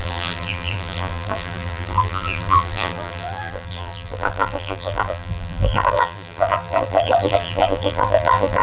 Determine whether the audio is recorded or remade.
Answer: remade